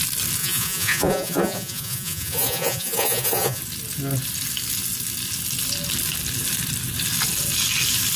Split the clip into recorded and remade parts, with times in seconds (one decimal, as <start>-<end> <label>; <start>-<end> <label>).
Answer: 0.0-0.4 recorded; 0.4-3.6 remade; 3.6-8.2 recorded